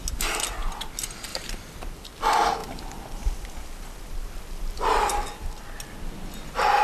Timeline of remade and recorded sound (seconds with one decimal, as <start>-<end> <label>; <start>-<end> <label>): 0.0-1.3 recorded; 1.3-1.9 remade; 1.9-2.6 recorded; 2.6-5.5 remade; 5.5-6.8 recorded